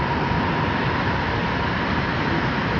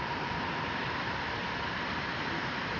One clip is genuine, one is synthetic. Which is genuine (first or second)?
first